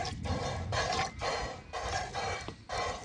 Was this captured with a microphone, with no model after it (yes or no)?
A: yes